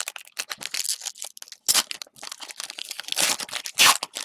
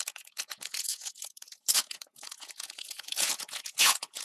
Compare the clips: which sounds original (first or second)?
first